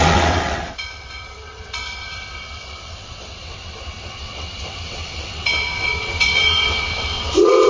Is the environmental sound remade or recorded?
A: remade